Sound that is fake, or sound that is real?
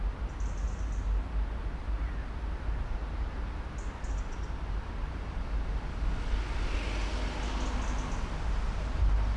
real